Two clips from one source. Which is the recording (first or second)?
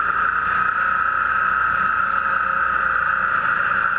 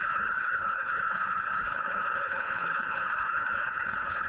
first